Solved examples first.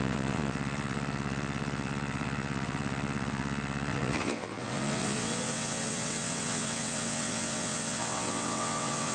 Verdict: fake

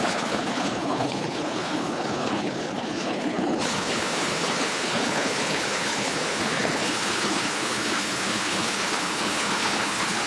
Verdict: fake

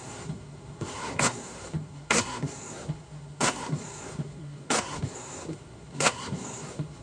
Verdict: fake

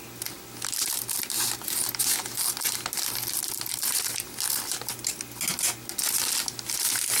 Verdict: real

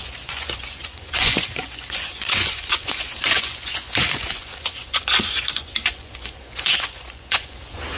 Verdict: fake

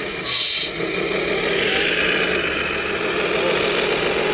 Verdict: real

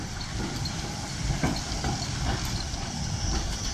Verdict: real